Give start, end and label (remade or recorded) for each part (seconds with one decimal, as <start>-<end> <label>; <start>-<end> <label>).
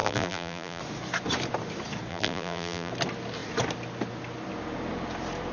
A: 0.0-0.8 remade; 0.8-2.1 recorded; 2.1-2.9 remade; 2.9-5.5 recorded